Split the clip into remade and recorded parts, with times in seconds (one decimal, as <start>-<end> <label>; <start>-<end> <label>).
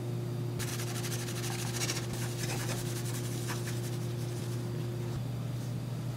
0.0-6.2 recorded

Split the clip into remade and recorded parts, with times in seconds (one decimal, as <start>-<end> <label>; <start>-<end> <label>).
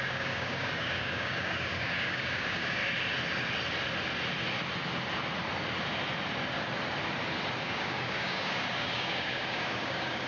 0.0-2.8 remade; 2.8-7.6 recorded; 7.6-10.3 remade